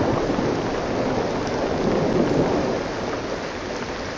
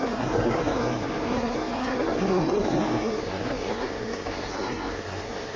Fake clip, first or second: second